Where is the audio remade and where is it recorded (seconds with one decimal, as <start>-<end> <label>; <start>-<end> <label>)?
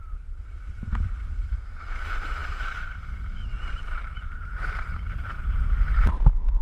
0.0-0.5 remade; 0.5-2.4 recorded; 2.4-6.1 remade; 6.1-6.6 recorded